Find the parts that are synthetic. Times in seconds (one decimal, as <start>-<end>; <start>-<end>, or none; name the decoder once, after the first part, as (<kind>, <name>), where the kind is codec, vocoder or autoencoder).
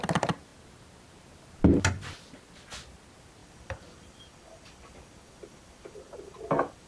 3.4-6.9 (vocoder, BigVGAN v2)